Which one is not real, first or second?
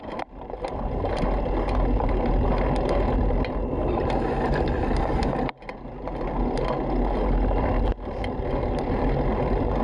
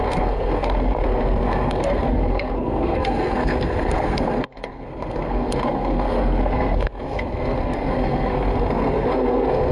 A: second